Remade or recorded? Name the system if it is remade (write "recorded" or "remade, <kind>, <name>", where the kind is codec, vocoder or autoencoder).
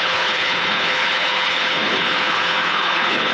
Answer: remade, codec, HILCodec